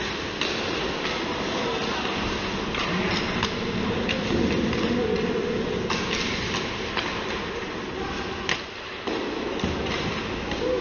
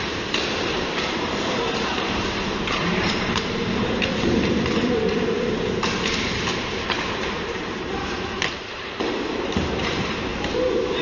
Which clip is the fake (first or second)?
second